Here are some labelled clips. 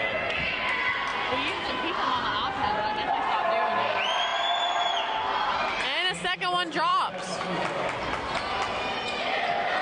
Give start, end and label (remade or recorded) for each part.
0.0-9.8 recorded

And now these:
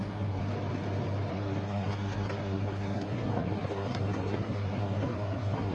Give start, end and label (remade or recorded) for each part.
0.0-0.4 remade; 0.4-1.3 recorded; 1.3-5.7 remade

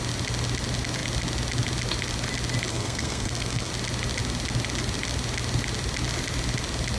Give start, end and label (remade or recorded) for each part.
0.0-2.7 recorded; 2.7-3.7 remade; 3.7-7.0 recorded

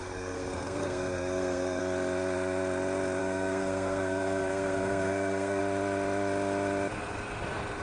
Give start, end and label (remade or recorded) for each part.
0.0-1.8 remade; 1.8-3.2 recorded; 3.2-5.6 remade; 5.6-7.8 recorded

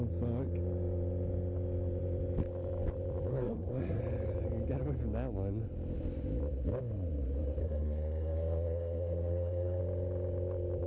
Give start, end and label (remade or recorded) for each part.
0.0-3.3 recorded; 3.3-4.0 remade; 4.0-7.6 recorded; 7.6-9.8 remade; 9.8-10.9 recorded

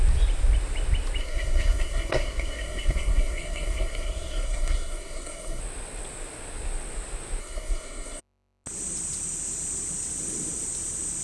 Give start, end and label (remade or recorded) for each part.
0.0-1.2 recorded; 1.2-5.6 remade; 5.6-7.4 recorded; 7.4-8.2 remade; 8.2-11.2 recorded

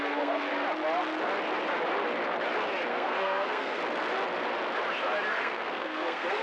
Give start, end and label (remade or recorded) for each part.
0.0-0.5 remade; 0.5-2.9 recorded; 2.9-3.8 remade; 3.8-5.3 recorded; 5.3-6.4 remade

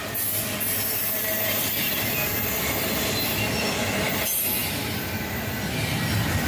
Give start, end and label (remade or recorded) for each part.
0.0-6.5 recorded